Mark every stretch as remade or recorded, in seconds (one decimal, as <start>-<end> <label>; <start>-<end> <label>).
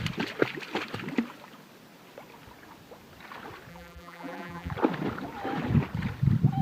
0.0-3.7 recorded; 3.7-4.7 remade; 4.7-6.6 recorded